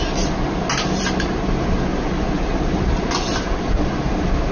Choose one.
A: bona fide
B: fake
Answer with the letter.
A